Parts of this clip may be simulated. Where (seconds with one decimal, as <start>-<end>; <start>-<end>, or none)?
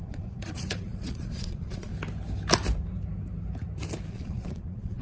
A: 0.0-1.9; 4.1-5.0